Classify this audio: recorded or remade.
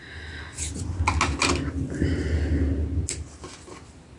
recorded